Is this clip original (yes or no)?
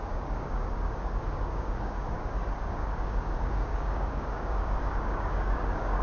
no